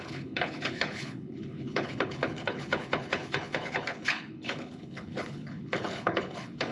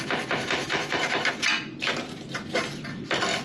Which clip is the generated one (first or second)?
first